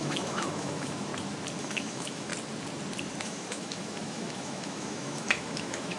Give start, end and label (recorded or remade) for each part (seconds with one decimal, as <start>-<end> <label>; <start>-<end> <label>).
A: 0.0-1.1 remade; 1.1-1.6 recorded; 1.6-2.3 remade; 2.3-3.2 recorded; 3.2-6.0 remade